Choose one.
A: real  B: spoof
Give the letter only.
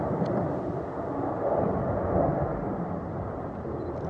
A